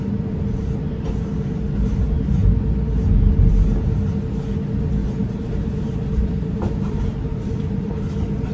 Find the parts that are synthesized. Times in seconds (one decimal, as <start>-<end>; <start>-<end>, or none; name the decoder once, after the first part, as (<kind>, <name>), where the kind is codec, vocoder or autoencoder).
5.0-7.9 (vocoder, BigVGAN v2)